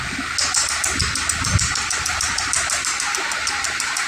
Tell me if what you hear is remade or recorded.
recorded